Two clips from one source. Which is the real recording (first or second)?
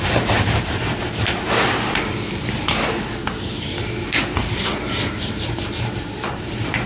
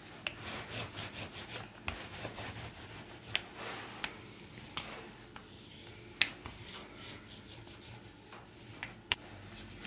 second